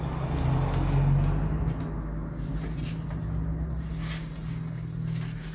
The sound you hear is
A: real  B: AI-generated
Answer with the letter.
A